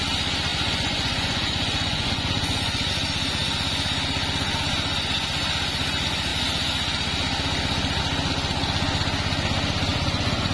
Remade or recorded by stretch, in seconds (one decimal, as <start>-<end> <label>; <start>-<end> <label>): 0.0-0.5 recorded; 0.5-2.9 remade; 2.9-9.9 recorded; 9.9-10.5 remade